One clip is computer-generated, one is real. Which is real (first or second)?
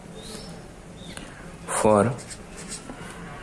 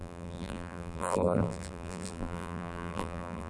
first